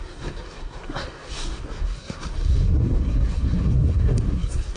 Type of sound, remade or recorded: remade